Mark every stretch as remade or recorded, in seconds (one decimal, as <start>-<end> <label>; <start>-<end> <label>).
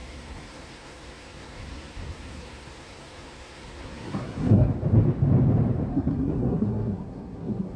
0.0-4.7 remade; 4.7-5.9 recorded; 5.9-7.8 remade